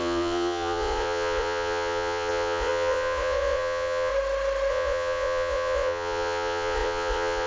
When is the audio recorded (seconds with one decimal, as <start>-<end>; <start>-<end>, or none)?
4.1-4.7